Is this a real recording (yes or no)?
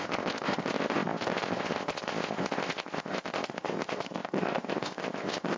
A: no